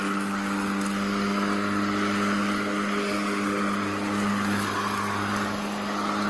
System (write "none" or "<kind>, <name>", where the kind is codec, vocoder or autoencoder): none